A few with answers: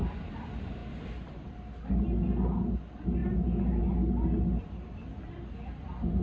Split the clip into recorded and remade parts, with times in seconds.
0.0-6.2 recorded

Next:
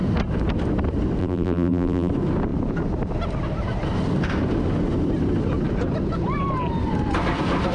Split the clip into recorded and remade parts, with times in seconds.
0.0-1.2 recorded; 1.2-2.1 remade; 2.1-7.7 recorded

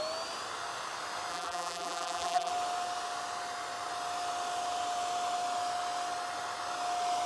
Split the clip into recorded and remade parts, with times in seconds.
0.0-1.3 recorded; 1.3-2.5 remade; 2.5-7.3 recorded